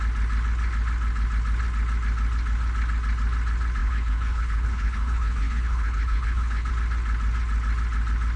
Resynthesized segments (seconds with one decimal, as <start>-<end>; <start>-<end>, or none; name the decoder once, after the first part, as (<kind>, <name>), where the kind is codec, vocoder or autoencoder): 3.8-6.7 (codec, HILCodec)